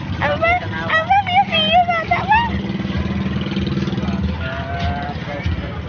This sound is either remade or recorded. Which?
recorded